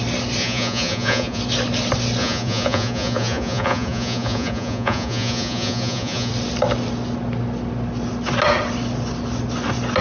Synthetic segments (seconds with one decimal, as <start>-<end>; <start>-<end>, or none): 0.4-1.4; 2.2-6.3

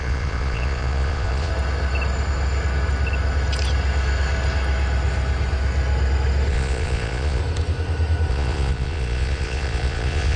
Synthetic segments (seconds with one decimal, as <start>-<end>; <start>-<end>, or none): 0.0-1.5; 6.5-7.4; 8.3-10.4

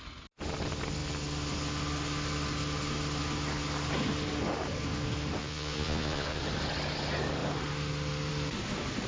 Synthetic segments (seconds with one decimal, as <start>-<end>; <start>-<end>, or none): 5.4-6.4

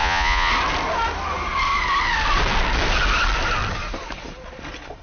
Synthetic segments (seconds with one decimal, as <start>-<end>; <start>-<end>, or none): 0.0-0.5

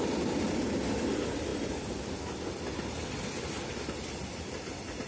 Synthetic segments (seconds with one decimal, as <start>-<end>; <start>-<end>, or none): none

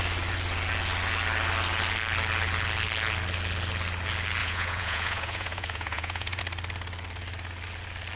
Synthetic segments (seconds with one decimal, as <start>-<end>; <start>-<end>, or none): 4.4-6.4

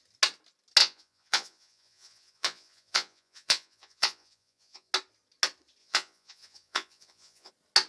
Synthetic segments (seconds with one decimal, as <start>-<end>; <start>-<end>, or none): 0.8-4.9; 5.8-7.5

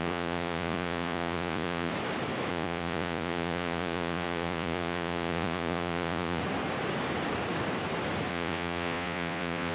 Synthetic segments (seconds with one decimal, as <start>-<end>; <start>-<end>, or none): 0.0-1.9; 2.5-6.4; 8.3-9.7